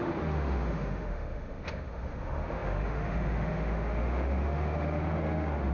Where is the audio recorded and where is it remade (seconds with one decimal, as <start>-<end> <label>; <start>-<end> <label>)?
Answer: 0.0-5.7 remade